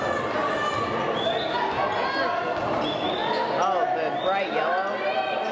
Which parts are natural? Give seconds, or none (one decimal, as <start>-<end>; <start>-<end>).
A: 0.0-5.5